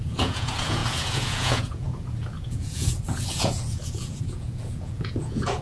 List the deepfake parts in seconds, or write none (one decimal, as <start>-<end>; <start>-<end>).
0.0-5.6